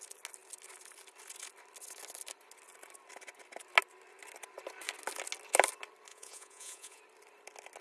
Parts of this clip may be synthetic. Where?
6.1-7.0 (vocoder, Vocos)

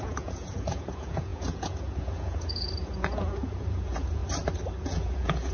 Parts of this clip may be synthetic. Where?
0.0-4.2 (vocoder, Vocos); 4.8-5.5

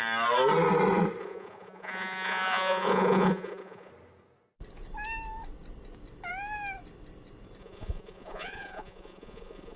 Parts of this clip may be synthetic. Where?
1.2-3.9 (vocoder, Vocos); 7.6-9.8

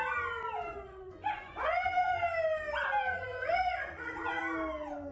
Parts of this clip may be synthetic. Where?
0.7-2.2 (vocoder, Vocos); 3.1-4.4

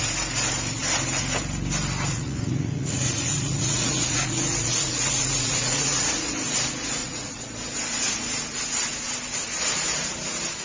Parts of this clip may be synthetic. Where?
2.1-6.3 (vocoder, Vocos); 7.0-7.5

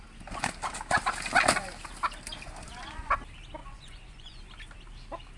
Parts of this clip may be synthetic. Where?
3.6-4.4 (vocoder, Vocos)